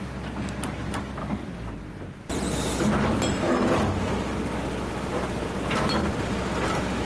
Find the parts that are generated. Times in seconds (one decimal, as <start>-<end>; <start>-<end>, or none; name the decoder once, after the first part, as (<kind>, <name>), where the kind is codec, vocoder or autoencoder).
1.2-1.7 (codec, DAC)